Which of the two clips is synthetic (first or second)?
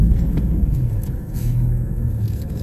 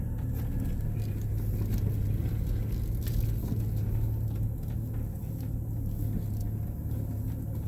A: first